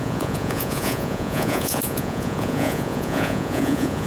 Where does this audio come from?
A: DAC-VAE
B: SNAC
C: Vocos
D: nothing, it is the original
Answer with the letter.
C